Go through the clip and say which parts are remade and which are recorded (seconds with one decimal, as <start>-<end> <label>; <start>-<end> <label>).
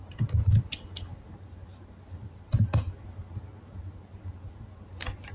0.0-5.3 recorded